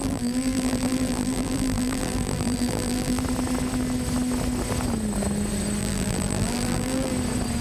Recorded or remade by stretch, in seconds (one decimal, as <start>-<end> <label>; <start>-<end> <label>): 0.0-3.2 remade; 3.2-5.8 recorded; 5.8-7.1 remade; 7.1-7.6 recorded